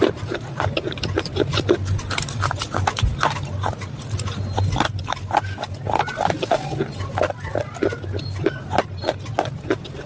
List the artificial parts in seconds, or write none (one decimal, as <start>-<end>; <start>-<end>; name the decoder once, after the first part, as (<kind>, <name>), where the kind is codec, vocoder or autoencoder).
none